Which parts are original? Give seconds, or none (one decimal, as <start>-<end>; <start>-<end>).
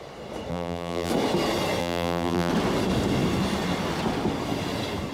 0.0-0.5; 1.1-1.8; 2.5-5.1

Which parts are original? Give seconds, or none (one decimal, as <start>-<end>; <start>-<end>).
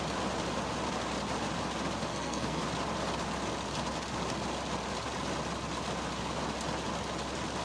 0.0-2.1; 2.6-7.6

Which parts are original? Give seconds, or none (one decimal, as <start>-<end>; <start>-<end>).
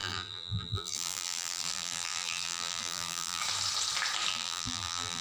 3.4-4.3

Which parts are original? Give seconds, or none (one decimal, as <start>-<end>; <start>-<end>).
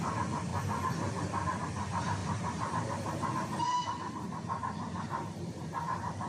0.0-2.2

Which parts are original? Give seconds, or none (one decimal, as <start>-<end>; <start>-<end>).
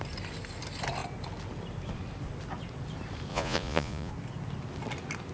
0.0-3.3; 4.1-5.3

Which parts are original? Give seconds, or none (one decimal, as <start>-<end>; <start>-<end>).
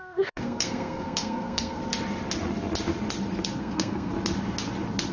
1.8-3.6; 4.1-5.1